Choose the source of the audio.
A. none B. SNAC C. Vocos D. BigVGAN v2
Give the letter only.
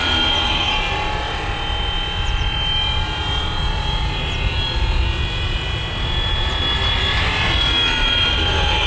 A